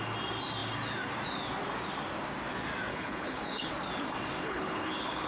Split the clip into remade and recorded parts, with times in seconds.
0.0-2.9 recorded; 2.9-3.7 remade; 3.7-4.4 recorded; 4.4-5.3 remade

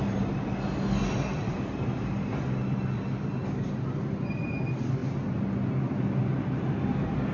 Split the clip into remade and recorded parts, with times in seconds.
0.0-1.3 recorded; 1.3-2.2 remade; 2.2-7.3 recorded

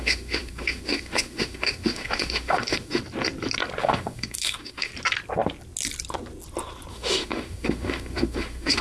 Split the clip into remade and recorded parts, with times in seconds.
0.0-3.0 remade; 3.0-3.8 recorded; 3.8-4.9 remade; 4.9-6.9 recorded; 6.9-8.8 remade

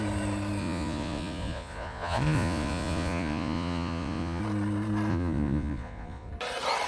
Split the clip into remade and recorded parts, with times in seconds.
0.0-0.6 recorded; 0.6-4.4 remade; 4.4-5.1 recorded; 5.1-6.3 remade; 6.3-6.9 recorded

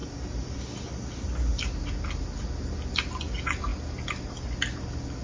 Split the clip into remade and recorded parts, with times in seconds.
0.0-0.6 remade; 0.6-5.2 recorded

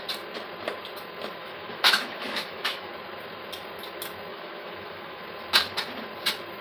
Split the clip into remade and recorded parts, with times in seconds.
0.0-1.4 recorded; 1.4-2.9 remade; 2.9-4.3 recorded; 4.3-5.2 remade; 5.2-6.6 recorded

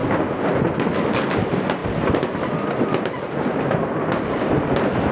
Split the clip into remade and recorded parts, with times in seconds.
0.0-1.4 remade; 1.4-5.1 recorded